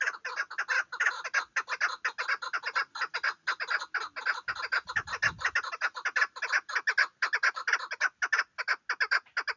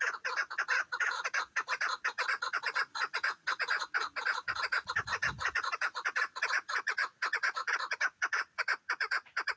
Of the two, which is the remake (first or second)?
second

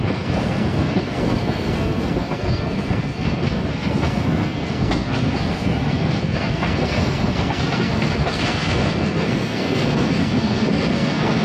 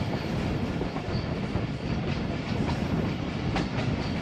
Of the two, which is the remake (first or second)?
first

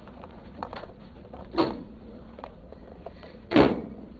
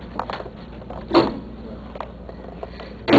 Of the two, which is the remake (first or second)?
first